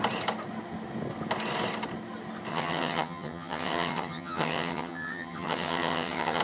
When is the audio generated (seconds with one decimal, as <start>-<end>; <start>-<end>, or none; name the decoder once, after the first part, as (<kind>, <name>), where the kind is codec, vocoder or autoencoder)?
2.5-6.4 (vocoder, HiFi-GAN)